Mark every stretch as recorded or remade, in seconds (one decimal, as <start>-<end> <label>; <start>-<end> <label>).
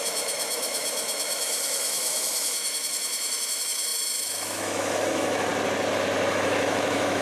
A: 0.0-5.5 remade; 5.5-6.3 recorded; 6.3-7.2 remade